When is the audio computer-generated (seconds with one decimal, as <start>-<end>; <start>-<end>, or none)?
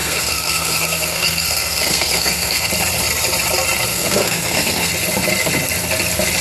0.0-2.7; 3.9-4.9